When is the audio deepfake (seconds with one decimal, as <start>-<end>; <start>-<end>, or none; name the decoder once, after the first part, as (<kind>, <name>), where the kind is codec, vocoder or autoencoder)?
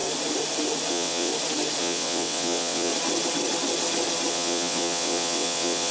0.9-1.3 (vocoder, WaveNeXt); 1.8-2.9; 4.3-5.9